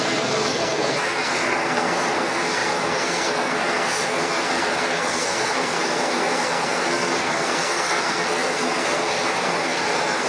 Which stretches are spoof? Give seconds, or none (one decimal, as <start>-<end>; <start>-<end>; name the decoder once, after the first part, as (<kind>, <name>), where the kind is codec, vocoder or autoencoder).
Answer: 0.0-10.3 (codec, SNAC)